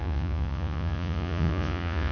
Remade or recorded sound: remade